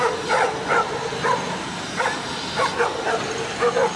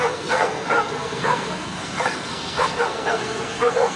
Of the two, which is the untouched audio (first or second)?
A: first